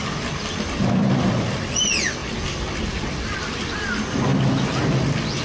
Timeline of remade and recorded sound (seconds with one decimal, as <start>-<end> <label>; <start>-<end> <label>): 0.0-1.0 recorded; 1.0-1.8 remade; 1.8-2.2 recorded; 2.2-3.9 remade; 3.9-5.4 recorded